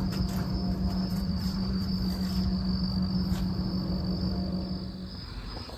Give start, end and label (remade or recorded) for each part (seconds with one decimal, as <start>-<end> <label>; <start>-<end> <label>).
0.0-1.1 recorded; 1.1-1.9 remade; 1.9-5.8 recorded